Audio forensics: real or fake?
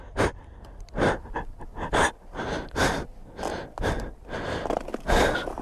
real